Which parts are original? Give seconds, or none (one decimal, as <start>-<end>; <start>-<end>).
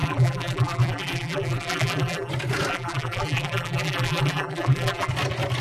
2.3-2.7; 5.1-5.6